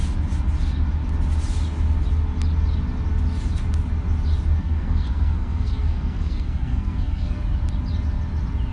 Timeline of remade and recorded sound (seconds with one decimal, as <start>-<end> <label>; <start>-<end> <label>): 0.0-4.6 recorded; 4.6-7.4 remade; 7.4-8.7 recorded